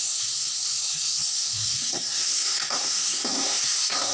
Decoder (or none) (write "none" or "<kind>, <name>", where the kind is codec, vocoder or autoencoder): codec, SNAC